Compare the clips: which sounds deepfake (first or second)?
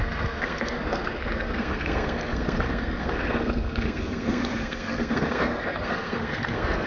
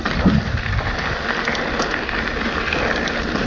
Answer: first